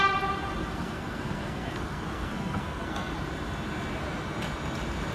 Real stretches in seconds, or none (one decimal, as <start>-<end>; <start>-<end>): 0.0-0.6; 3.1-5.1